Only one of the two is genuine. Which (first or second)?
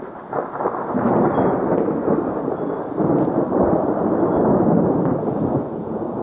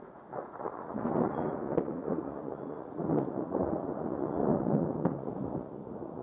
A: first